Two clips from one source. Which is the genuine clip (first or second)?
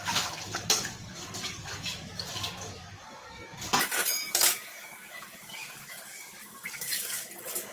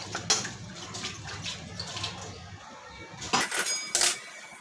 second